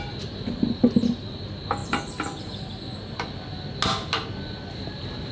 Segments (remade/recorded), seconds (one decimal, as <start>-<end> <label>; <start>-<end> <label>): 0.0-5.3 recorded